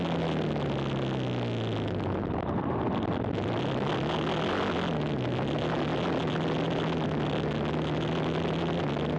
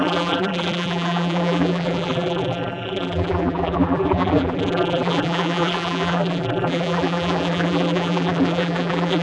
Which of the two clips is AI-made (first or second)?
second